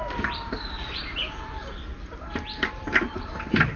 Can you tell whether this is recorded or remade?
recorded